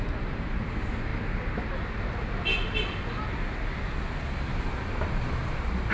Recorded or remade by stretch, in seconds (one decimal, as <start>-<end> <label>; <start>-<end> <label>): 0.0-1.1 remade; 1.1-4.6 recorded; 4.6-5.9 remade

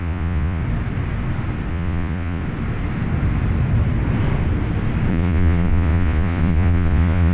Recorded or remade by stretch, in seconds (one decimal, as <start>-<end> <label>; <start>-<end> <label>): 0.0-0.6 remade; 0.6-1.7 recorded; 1.7-2.4 remade; 2.4-5.1 recorded; 5.1-7.3 remade

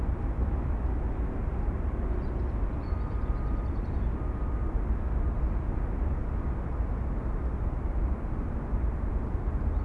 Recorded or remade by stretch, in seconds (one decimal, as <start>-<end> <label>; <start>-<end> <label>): 0.0-9.8 recorded

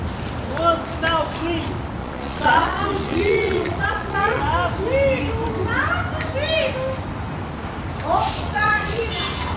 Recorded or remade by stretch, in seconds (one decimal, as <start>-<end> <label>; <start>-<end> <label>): 0.0-2.0 recorded; 2.0-4.4 remade; 4.4-8.4 recorded; 8.4-9.0 remade; 9.0-9.6 recorded